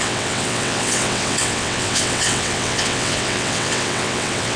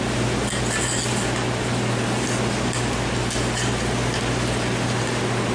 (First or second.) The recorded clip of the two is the second